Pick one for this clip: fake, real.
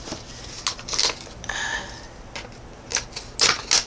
real